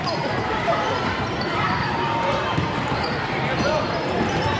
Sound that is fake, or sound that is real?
fake